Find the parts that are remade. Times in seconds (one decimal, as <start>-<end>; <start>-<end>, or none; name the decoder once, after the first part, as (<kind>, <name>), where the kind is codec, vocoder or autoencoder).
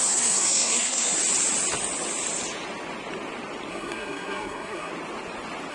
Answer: 0.0-1.2 (codec, SNAC); 3.7-4.9